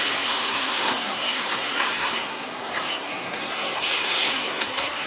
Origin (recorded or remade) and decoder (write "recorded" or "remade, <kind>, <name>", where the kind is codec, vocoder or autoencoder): remade, codec, SNAC